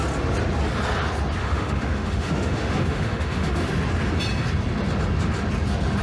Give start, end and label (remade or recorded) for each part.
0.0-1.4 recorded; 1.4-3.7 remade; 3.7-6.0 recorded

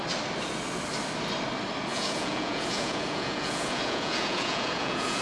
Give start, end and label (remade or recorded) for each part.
0.0-1.9 recorded; 1.9-5.2 remade

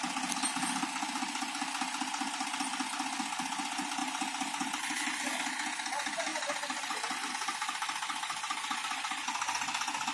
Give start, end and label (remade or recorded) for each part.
0.0-4.0 recorded; 4.0-5.0 remade; 5.0-6.3 recorded; 6.3-7.3 remade; 7.3-10.1 recorded

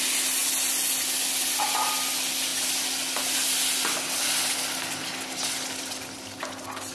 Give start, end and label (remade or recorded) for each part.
0.0-6.9 recorded

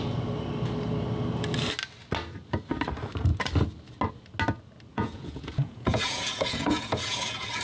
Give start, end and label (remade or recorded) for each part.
0.0-4.9 recorded; 4.9-7.6 remade

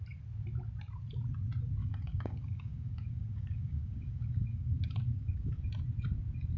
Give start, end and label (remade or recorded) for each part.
0.0-1.8 recorded; 1.8-5.6 remade; 5.6-6.6 recorded